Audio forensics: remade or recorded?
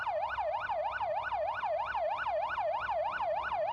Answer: recorded